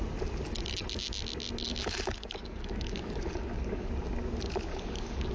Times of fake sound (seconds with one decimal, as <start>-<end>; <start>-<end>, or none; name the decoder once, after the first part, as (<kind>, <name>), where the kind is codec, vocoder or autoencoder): 1.7-3.9 (codec, DAC); 4.7-5.3